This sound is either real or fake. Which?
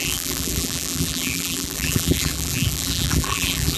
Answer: fake